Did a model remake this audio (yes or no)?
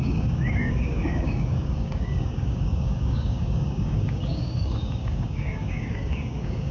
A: yes